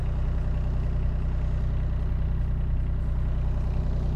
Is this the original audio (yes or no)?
yes